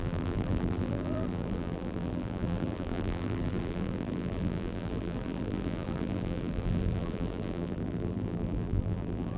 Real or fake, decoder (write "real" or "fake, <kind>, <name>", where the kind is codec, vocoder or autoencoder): fake, vocoder, BigVGAN v2